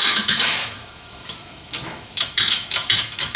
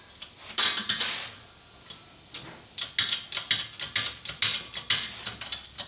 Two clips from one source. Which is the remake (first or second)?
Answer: first